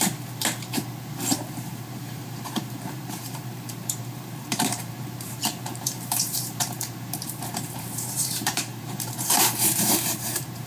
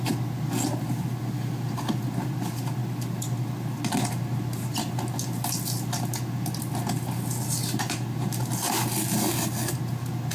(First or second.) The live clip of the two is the second